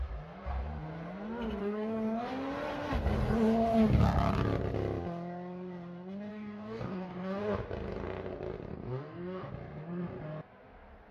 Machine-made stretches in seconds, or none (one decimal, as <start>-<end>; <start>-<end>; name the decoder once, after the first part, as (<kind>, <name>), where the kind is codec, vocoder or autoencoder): 1.6-2.3 (codec, DAC); 6.3-7.4; 8.7-9.5